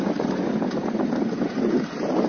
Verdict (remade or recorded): recorded